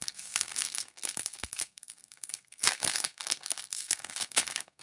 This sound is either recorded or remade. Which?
remade